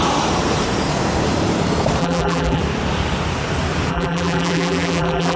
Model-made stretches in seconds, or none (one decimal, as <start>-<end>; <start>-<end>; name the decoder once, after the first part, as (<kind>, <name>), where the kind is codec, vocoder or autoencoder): 2.0-2.6 (vocoder, BigVGAN v2); 3.9-5.4